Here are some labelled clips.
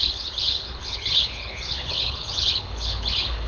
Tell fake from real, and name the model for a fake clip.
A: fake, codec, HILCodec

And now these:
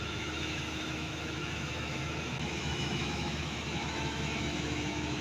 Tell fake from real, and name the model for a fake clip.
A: fake, autoencoder, DAC-VAE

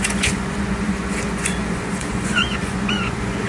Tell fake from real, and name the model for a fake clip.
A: fake, vocoder, Vocos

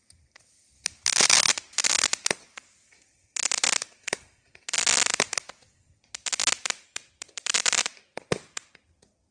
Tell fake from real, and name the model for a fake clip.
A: real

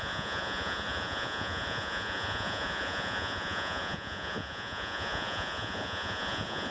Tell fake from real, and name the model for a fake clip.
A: fake, vocoder, Vocos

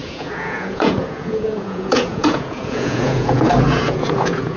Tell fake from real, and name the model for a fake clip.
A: fake, vocoder, Vocos